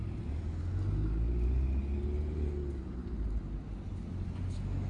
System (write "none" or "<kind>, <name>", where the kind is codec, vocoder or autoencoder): none